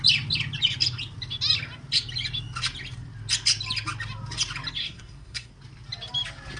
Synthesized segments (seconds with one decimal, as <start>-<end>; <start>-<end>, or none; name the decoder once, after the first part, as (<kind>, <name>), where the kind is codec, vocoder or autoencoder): 4.8-5.5 (codec, SNAC)